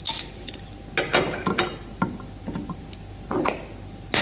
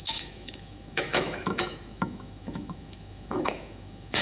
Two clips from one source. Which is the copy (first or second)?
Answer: second